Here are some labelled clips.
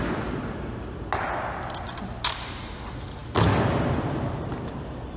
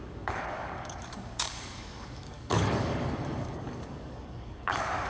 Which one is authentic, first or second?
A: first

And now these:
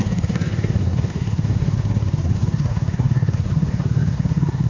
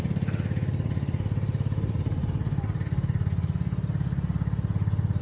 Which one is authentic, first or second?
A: second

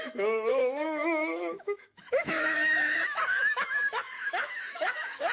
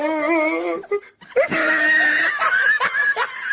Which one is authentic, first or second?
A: second